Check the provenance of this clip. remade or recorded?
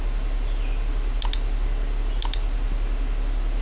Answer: recorded